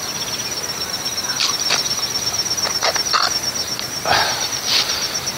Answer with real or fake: real